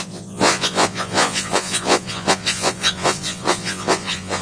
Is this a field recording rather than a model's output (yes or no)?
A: no